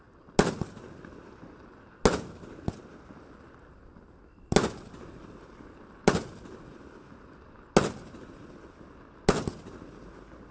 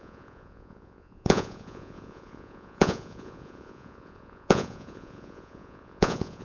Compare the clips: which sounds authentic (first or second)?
first